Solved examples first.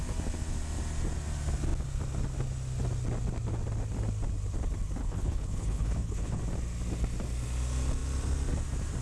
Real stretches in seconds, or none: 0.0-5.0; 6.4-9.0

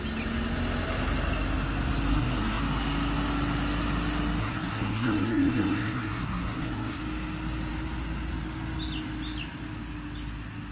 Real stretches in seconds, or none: 0.0-2.1; 2.6-4.4; 7.0-10.7

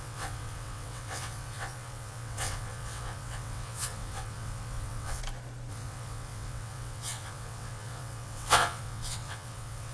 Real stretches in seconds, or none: 5.2-5.7

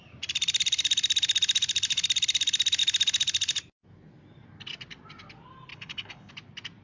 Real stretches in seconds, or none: 0.0-5.7; 6.3-6.8

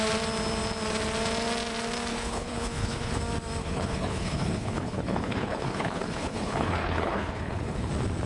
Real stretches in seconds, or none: 0.0-2.1; 3.2-3.6; 7.9-8.3

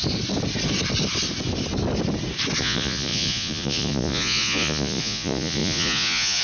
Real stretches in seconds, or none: 0.0-2.6

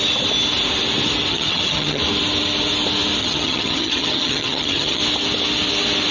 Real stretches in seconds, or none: 0.0-1.3; 2.0-3.2; 5.0-6.1